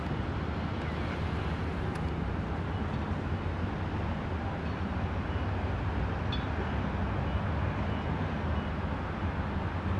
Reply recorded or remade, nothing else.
recorded